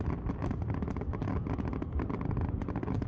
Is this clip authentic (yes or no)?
yes